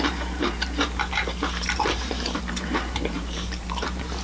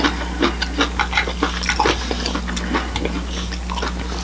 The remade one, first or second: first